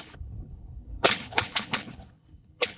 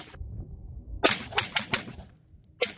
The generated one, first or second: first